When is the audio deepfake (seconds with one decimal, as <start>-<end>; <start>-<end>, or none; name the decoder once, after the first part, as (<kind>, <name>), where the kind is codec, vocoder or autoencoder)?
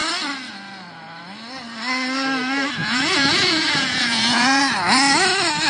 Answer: 2.8-4.6 (vocoder, Vocos)